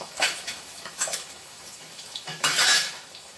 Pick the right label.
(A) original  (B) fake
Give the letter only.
B